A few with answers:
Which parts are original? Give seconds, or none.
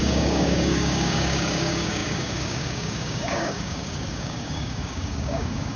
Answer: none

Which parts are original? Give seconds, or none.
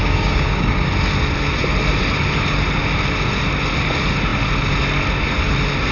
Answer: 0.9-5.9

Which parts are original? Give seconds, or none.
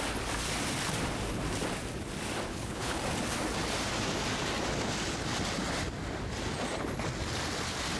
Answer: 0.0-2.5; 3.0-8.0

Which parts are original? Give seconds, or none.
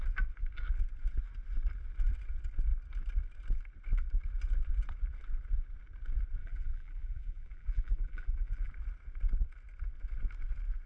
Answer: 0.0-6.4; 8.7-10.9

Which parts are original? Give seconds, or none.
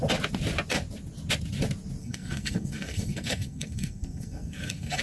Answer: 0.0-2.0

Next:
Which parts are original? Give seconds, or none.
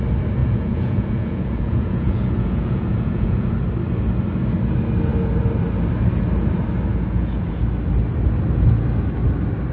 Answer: 0.0-0.4; 3.5-6.9; 7.6-9.7